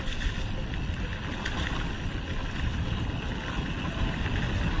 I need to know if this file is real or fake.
real